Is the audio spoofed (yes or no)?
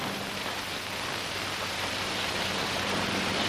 yes